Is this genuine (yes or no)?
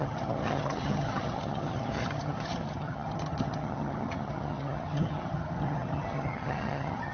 no